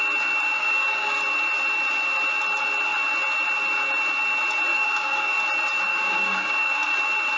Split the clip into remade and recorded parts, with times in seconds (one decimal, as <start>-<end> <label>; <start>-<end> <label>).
0.0-0.6 recorded; 0.6-1.2 remade; 1.2-4.7 recorded; 4.7-5.4 remade; 5.4-5.9 recorded; 5.9-7.0 remade; 7.0-7.4 recorded